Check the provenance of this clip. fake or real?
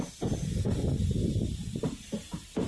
real